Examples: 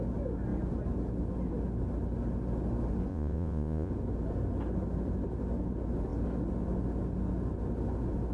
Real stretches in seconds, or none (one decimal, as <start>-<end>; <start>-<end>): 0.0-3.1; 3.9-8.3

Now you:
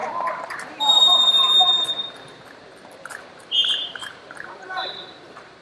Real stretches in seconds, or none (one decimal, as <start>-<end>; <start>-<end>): none

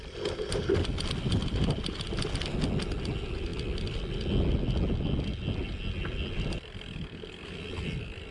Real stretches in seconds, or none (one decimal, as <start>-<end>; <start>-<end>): 0.0-8.3

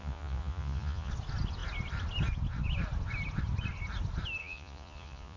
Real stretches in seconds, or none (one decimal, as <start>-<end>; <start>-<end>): 1.1-4.4